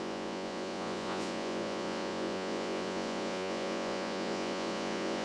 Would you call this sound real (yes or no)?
no